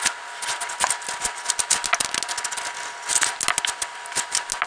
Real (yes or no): yes